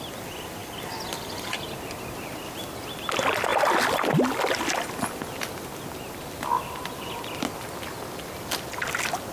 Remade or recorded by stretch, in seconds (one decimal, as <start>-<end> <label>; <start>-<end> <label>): 0.0-9.3 recorded